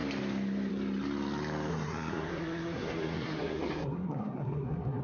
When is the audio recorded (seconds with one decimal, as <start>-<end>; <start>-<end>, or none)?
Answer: 0.0-1.7